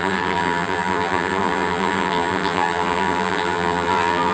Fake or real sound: fake